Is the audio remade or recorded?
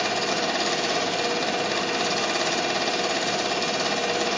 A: recorded